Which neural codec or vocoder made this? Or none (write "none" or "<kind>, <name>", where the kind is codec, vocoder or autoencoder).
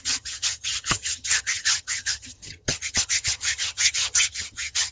vocoder, HiFi-GAN